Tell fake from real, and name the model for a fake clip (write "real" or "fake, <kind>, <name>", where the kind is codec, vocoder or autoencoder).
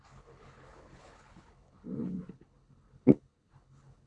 fake, codec, HILCodec